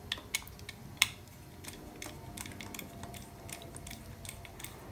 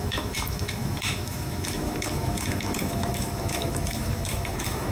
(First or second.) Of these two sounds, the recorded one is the first